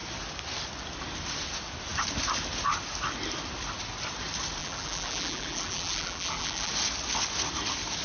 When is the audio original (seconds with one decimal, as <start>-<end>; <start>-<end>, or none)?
0.0-4.6; 6.7-8.0